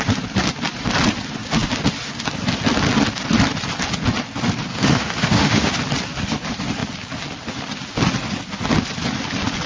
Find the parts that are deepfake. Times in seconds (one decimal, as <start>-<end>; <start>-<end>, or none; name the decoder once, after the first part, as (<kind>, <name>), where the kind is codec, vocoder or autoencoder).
4.7-5.7 (autoencoder, DAC-VAE)